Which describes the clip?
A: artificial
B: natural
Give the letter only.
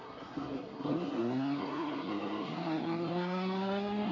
A